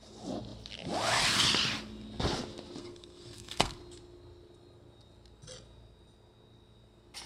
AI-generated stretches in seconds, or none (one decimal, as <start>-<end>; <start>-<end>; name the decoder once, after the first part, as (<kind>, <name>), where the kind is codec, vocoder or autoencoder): 2.8-3.8 (codec, SNAC)